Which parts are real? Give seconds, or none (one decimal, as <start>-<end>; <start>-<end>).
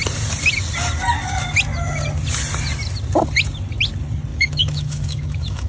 0.0-4.3